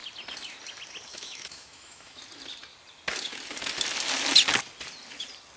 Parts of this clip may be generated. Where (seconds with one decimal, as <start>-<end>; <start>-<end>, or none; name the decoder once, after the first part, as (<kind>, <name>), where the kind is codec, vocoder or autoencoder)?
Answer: 1.1-2.2 (autoencoder, DAC-VAE)